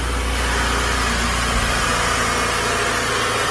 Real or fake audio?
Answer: real